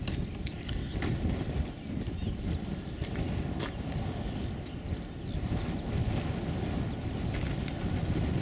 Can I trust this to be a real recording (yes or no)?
yes